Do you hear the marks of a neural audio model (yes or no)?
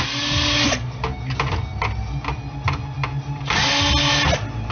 no